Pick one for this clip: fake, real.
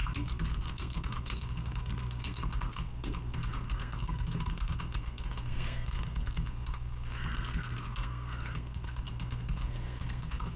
fake